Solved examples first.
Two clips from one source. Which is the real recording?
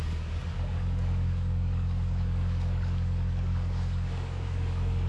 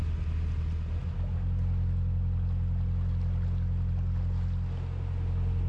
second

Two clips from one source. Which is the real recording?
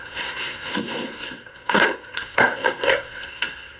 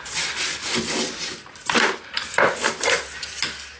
second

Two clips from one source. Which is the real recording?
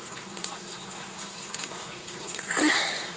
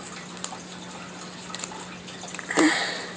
second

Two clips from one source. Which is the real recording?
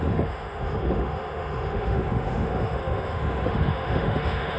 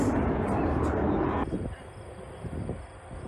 second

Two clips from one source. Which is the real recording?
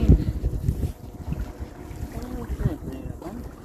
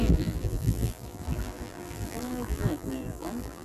first